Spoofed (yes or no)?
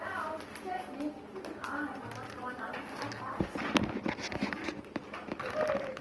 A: no